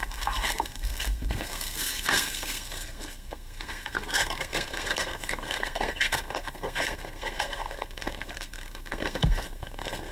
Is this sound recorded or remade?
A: remade